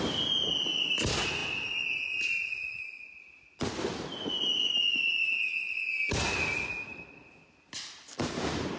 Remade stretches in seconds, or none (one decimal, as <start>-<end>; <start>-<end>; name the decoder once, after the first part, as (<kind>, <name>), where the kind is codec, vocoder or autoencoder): none